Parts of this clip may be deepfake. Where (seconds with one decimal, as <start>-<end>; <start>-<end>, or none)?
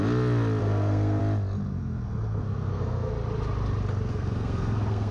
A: 0.6-1.2; 1.7-3.1; 4.1-5.1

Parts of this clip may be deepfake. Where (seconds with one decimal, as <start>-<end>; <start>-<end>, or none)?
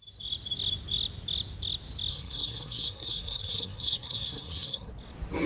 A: 2.1-4.9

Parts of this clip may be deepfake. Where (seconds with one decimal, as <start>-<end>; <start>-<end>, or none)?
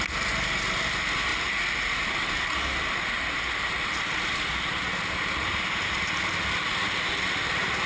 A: none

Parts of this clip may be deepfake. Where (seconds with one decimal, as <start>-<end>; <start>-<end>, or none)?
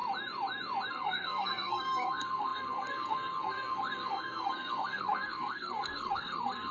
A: 0.9-6.7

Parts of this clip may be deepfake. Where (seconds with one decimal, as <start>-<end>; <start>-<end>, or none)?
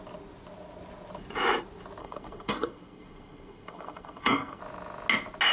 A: 2.0-4.6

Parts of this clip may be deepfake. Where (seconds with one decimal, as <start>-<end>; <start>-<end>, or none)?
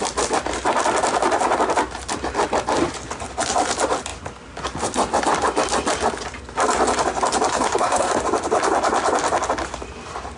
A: 7.5-8.1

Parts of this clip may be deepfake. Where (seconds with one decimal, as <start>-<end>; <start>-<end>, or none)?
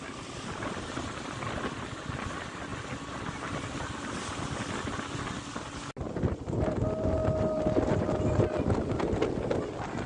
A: none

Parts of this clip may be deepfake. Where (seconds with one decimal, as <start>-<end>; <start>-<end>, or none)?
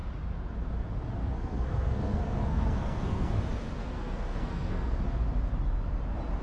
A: 1.2-3.4; 3.8-5.0